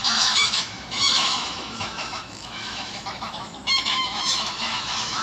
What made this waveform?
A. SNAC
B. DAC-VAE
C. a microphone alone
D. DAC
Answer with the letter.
B